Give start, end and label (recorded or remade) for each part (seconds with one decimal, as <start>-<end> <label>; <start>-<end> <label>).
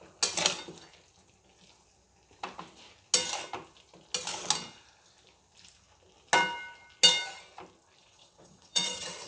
0.0-8.0 recorded; 8.0-9.3 remade